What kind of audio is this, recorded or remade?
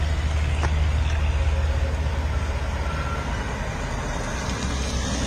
recorded